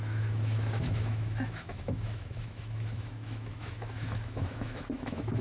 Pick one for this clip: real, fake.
fake